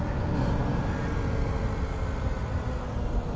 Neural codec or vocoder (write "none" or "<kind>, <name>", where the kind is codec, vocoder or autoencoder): none